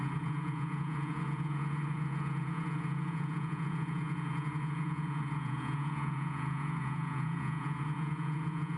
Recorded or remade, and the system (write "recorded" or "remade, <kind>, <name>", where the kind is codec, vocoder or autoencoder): remade, vocoder, Vocos